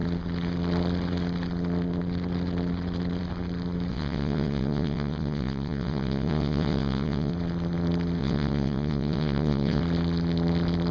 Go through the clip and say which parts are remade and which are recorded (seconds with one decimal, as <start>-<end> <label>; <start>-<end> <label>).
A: 0.0-3.9 recorded; 3.9-7.3 remade; 7.3-8.2 recorded; 8.2-9.8 remade; 9.8-10.9 recorded